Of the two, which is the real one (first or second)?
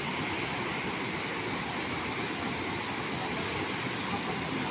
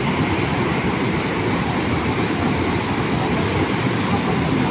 first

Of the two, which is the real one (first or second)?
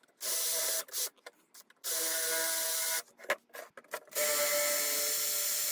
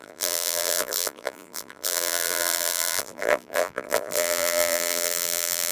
first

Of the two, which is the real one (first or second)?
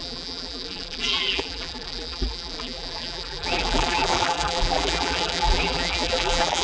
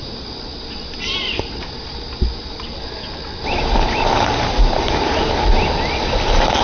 second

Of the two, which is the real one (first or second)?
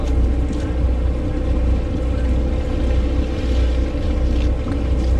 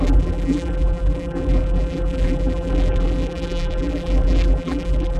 first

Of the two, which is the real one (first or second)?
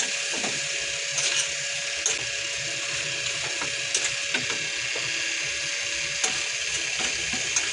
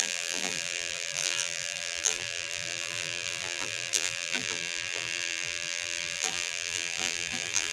first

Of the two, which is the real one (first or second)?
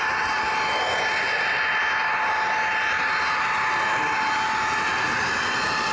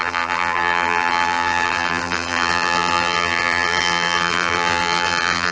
first